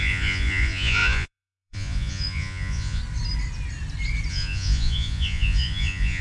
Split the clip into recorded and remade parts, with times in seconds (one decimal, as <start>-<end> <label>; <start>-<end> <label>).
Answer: 0.0-3.0 remade; 3.0-4.3 recorded; 4.3-6.2 remade